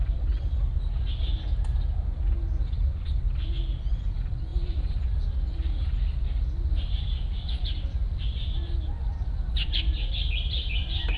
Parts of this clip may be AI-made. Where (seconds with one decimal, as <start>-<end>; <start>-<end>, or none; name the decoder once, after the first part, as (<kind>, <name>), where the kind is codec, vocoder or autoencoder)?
4.5-5.2 (vocoder, BigVGAN v2)